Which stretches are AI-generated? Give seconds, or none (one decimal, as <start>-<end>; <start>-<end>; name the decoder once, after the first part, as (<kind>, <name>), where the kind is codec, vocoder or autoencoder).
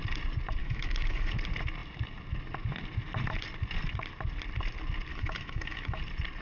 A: 0.6-1.3 (autoencoder, DAC-VAE); 5.1-6.0